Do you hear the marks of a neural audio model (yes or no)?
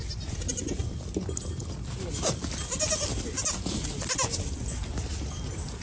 no